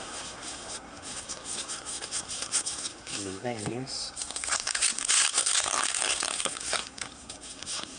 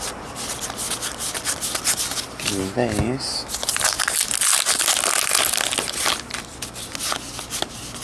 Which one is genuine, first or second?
second